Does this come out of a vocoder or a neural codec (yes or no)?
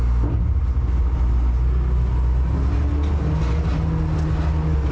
no